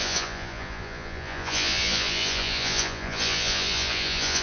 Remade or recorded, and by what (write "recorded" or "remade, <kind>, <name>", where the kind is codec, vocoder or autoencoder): remade, vocoder, Vocos